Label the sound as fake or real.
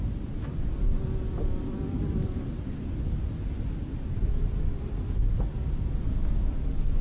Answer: real